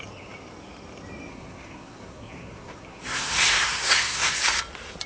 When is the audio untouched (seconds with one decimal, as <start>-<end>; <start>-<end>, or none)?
0.0-1.3; 4.4-5.1